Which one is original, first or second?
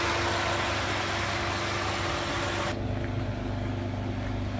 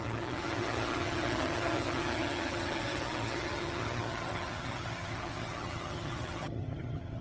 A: first